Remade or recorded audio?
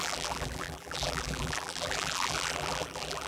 remade